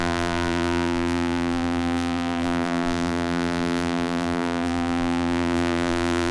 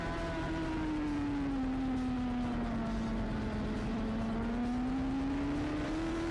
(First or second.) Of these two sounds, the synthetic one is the first